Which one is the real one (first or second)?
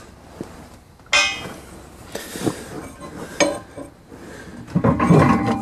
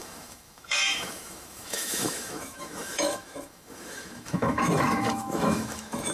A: first